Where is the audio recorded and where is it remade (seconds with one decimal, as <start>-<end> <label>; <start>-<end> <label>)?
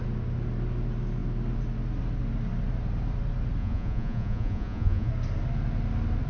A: 0.0-3.6 recorded; 3.6-5.1 remade; 5.1-6.3 recorded